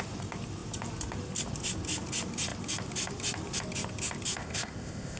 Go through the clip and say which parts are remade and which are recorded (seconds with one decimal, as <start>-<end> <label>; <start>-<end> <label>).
0.0-4.4 recorded; 4.4-5.2 remade